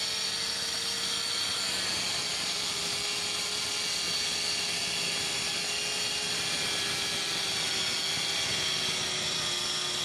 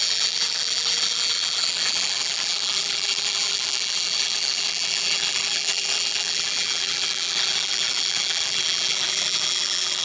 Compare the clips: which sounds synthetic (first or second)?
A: second